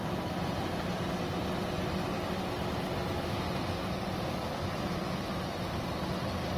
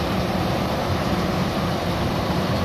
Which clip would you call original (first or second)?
first